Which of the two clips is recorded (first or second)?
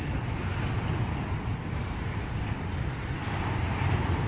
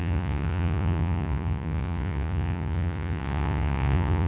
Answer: first